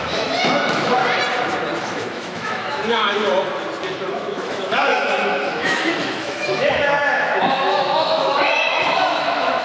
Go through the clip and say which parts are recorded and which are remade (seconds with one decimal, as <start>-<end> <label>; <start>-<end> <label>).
0.0-1.0 remade; 1.0-1.8 recorded; 1.8-3.0 remade; 3.0-4.1 recorded; 4.1-9.6 remade